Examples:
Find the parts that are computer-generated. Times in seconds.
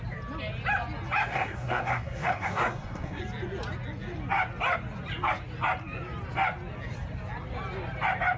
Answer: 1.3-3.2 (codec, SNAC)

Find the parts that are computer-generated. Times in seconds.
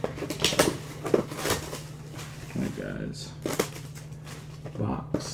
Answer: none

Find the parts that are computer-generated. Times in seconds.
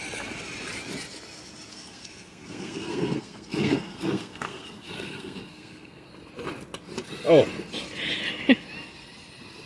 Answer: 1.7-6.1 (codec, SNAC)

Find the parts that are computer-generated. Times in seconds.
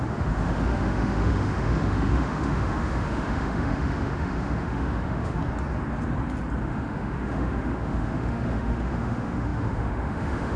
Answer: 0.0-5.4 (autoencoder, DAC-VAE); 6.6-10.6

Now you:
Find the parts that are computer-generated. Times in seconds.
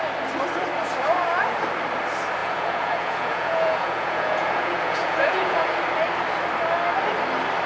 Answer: 2.4-5.7 (vocoder, Vocos)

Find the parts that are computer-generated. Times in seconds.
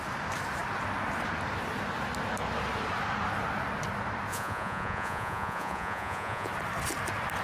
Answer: 4.3-6.5 (vocoder, Vocos)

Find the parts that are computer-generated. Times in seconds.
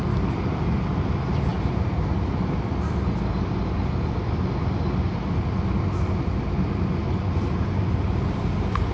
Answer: none